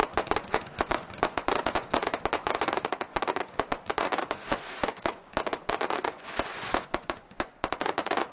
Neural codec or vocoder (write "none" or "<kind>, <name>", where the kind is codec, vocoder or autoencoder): vocoder, Vocos